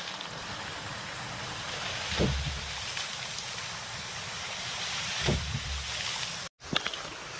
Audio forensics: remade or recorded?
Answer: recorded